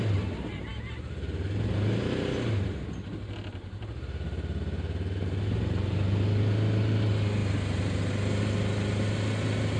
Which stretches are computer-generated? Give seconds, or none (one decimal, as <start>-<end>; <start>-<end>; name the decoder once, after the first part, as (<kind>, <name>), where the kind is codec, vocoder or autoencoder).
none